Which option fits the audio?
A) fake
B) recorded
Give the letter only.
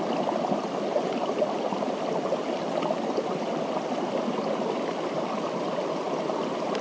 B